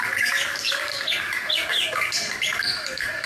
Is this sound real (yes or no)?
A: no